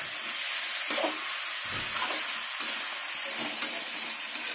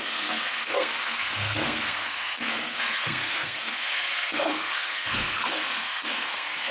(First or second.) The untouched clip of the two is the first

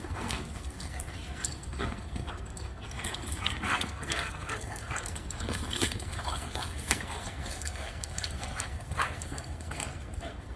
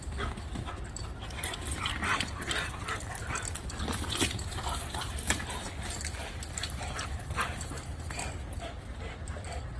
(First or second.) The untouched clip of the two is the second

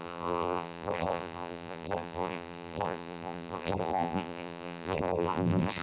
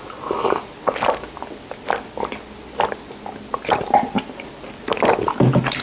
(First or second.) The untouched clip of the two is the second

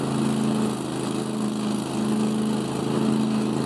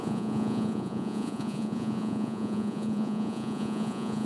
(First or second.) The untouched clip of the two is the first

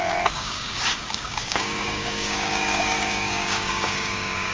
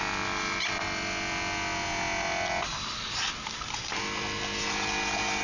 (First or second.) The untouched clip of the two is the second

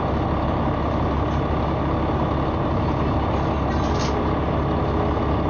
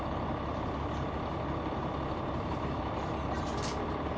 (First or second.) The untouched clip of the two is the first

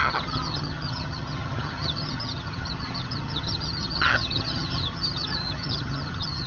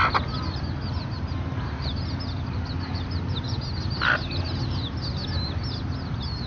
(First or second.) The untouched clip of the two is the second